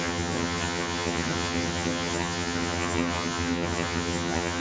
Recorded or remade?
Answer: remade